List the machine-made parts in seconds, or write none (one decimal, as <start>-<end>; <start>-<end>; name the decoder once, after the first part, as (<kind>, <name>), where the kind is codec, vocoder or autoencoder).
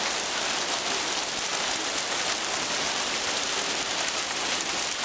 none